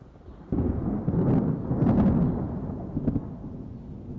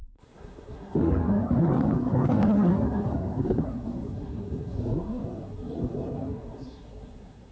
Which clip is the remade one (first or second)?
second